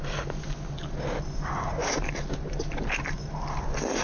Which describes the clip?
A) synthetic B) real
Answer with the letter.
B